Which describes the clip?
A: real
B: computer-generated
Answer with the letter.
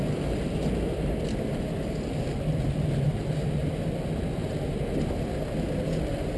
A